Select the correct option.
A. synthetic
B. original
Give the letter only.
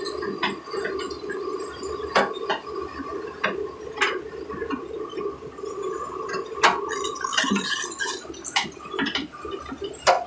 B